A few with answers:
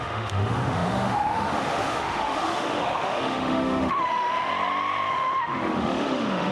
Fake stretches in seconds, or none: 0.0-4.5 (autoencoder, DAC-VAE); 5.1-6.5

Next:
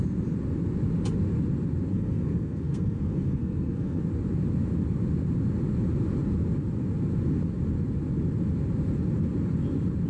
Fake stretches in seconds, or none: 1.9-4.0 (codec, SNAC)

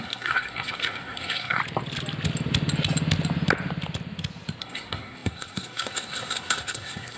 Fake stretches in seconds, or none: 0.0-1.6 (codec, SNAC); 4.6-7.2

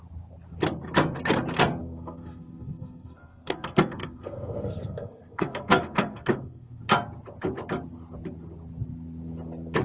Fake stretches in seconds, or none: 1.8-6.8 (codec, SNAC)

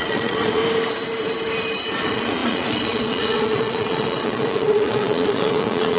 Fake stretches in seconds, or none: 0.0-0.6 (vocoder, Vocos); 2.0-6.0

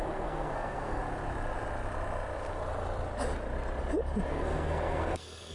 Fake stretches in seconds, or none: 0.0-1.0 (codec, SNAC); 4.3-5.5